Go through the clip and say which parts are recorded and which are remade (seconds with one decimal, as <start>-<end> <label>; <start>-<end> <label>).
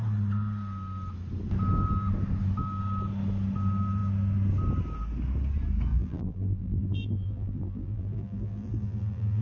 0.0-5.9 recorded; 5.9-9.4 remade